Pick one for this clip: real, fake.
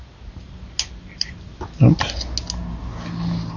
real